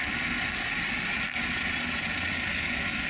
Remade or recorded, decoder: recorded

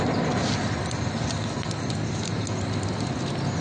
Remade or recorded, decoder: recorded